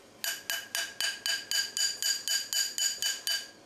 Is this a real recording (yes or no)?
yes